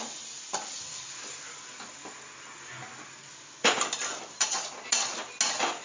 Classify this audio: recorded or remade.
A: recorded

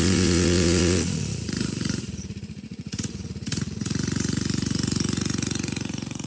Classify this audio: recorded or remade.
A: remade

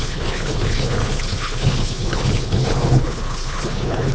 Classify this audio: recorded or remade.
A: remade